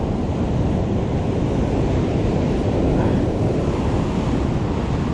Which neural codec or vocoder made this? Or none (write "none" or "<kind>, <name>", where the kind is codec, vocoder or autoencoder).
none